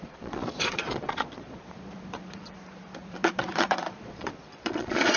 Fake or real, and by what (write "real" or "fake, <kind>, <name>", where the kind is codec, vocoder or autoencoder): fake, vocoder, Vocos